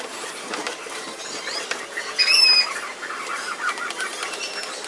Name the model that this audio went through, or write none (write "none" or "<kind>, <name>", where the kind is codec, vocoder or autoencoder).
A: vocoder, BigVGAN v2